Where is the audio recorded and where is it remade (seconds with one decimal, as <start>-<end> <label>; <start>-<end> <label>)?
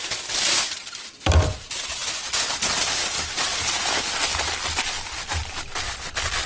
0.0-6.5 recorded